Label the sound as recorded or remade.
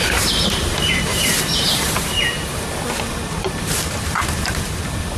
remade